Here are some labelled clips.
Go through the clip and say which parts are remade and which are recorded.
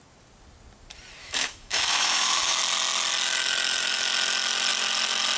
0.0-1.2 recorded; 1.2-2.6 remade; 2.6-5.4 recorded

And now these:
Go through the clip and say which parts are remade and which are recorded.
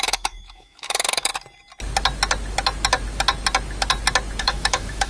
0.0-1.3 remade; 1.3-4.4 recorded; 4.4-5.1 remade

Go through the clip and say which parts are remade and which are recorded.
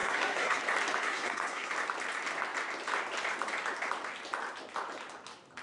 0.0-0.6 remade; 0.6-1.0 recorded; 1.0-1.7 remade; 1.7-5.6 recorded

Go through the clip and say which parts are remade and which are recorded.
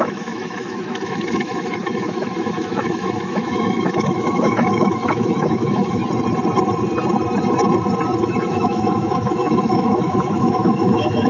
0.0-6.0 remade; 6.0-8.2 recorded; 8.2-11.3 remade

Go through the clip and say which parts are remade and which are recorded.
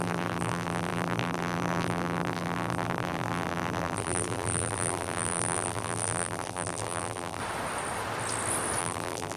0.0-7.4 remade; 7.4-8.8 recorded; 8.8-9.4 remade